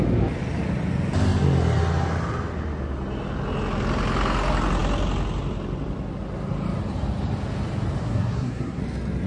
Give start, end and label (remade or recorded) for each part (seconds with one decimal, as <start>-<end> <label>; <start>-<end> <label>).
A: 0.0-8.0 recorded; 8.0-8.8 remade; 8.8-9.3 recorded